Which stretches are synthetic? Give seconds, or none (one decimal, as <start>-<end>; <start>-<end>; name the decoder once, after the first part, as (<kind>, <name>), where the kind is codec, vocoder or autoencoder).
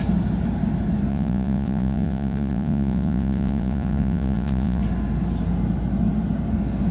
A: 1.1-4.8 (vocoder, Vocos)